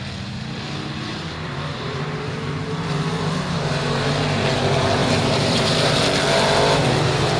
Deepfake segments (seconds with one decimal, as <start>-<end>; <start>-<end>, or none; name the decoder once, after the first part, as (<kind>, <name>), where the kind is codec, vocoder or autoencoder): 1.1-4.1 (vocoder, BigVGAN v2); 5.0-6.0